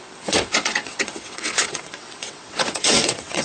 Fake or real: fake